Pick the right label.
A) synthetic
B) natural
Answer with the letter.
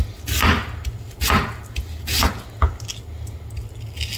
B